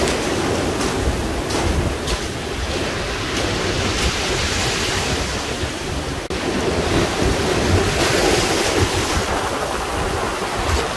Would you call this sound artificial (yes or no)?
no